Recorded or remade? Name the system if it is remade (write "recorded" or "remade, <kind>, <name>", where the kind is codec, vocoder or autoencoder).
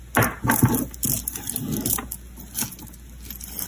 recorded